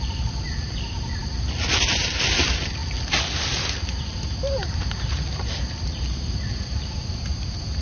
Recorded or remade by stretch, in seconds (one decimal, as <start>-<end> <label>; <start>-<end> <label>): 0.0-7.8 remade